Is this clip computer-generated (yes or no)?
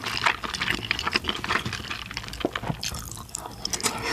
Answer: no